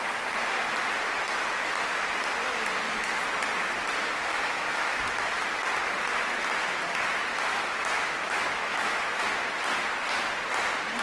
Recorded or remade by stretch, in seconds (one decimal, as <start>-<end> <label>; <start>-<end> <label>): 0.0-4.3 recorded; 4.3-5.0 remade; 5.0-7.5 recorded; 7.5-9.2 remade; 9.2-11.0 recorded